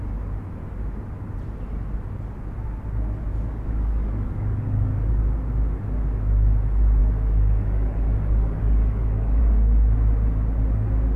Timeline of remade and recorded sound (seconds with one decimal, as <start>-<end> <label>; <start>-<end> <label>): 0.0-3.3 recorded; 3.3-5.1 remade; 5.1-7.0 recorded; 7.0-9.4 remade; 9.4-11.2 recorded

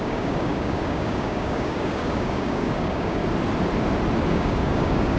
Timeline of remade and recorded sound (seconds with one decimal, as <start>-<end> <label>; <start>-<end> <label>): 0.0-3.2 remade; 3.2-4.3 recorded; 4.3-5.2 remade

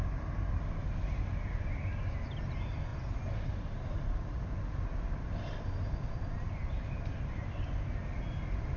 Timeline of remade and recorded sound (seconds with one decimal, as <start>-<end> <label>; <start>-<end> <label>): 0.0-8.8 recorded

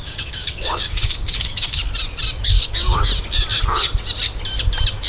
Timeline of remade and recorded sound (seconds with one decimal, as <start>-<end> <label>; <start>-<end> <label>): 0.0-1.8 remade; 1.8-2.4 recorded; 2.4-3.1 remade; 3.1-5.1 recorded

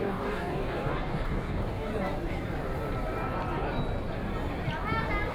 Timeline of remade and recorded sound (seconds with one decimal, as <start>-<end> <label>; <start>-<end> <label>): 0.0-1.9 remade; 1.9-5.3 recorded

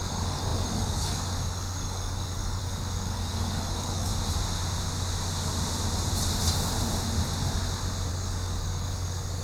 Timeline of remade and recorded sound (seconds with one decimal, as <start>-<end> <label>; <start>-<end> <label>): 0.0-4.1 remade; 4.1-8.1 recorded; 8.1-9.4 remade